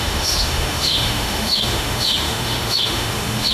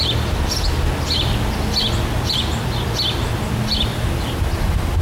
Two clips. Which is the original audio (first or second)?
second